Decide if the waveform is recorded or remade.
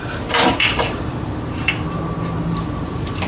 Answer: remade